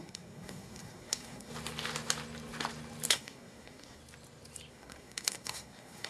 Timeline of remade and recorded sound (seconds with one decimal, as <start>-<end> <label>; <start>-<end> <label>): 0.0-1.5 remade; 1.5-3.1 recorded; 3.1-4.0 remade; 4.0-4.7 recorded; 4.7-6.1 remade